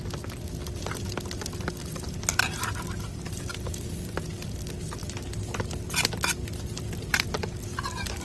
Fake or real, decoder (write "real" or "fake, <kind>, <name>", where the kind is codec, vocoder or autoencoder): real